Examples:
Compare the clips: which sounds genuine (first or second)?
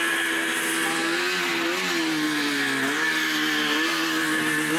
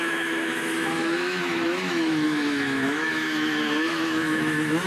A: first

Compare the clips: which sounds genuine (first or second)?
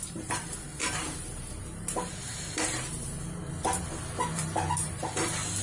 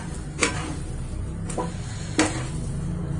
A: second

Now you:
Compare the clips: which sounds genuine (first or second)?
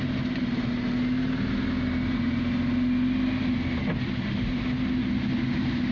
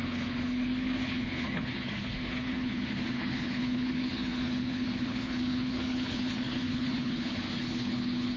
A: first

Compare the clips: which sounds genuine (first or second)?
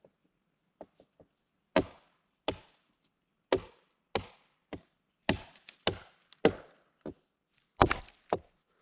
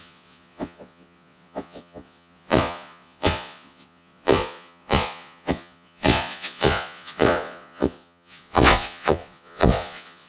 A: first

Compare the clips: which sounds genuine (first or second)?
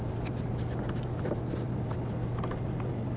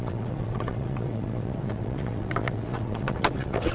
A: first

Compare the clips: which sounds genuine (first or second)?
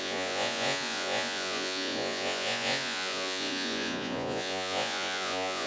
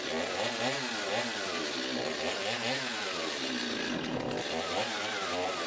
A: second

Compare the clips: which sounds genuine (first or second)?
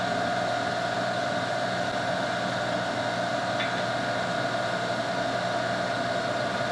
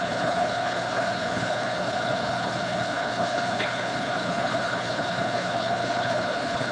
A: first